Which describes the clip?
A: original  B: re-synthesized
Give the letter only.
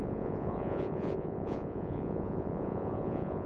B